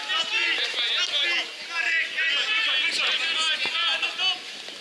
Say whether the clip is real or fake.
real